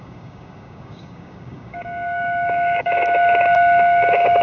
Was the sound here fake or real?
fake